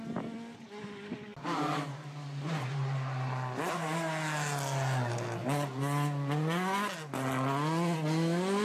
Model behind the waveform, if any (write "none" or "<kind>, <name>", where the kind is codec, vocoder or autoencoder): none